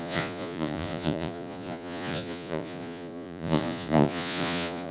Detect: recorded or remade remade